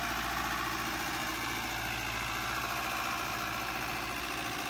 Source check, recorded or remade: recorded